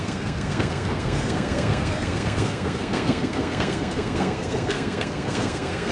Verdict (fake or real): fake